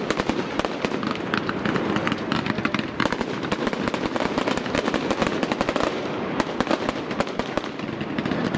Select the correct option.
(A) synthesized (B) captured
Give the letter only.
A